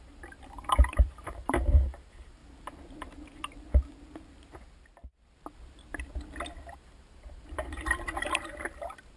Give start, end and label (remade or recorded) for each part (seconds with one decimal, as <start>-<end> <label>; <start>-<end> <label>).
0.0-2.4 remade; 2.4-6.7 recorded; 6.7-9.2 remade